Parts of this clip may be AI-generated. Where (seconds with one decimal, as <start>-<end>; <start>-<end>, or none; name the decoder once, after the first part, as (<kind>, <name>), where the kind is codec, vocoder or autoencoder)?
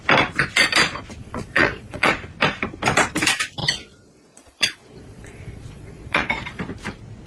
1.2-2.1 (vocoder, Vocos); 3.6-6.6